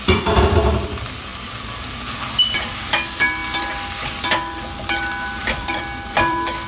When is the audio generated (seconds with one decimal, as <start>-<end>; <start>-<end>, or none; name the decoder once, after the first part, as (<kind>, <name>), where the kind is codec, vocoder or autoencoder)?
1.3-2.0 (vocoder, BigVGAN v2); 5.4-6.7